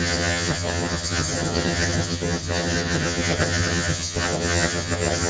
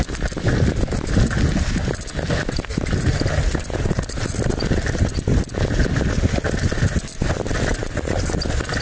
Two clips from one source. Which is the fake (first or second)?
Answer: first